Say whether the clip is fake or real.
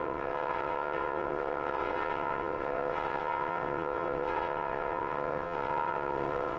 fake